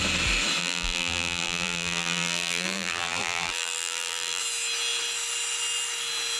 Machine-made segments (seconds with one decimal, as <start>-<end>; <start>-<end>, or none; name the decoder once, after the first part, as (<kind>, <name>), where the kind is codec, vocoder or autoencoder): 0.6-4.4 (vocoder, BigVGAN v2)